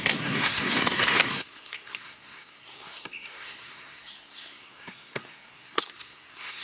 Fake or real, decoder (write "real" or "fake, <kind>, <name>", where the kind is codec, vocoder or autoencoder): fake, codec, SNAC